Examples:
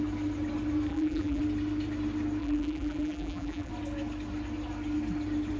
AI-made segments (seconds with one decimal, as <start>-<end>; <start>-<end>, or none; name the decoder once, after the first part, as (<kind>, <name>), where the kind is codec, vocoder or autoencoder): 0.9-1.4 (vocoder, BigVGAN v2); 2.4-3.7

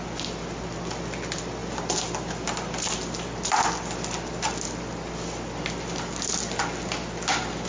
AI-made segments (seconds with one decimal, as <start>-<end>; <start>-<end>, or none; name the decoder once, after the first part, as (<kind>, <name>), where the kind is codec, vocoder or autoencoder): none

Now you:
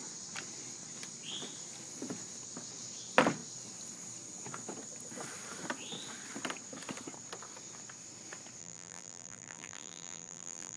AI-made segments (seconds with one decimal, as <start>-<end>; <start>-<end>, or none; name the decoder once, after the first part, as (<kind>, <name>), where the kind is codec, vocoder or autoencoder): 8.6-10.8 (vocoder, BigVGAN v2)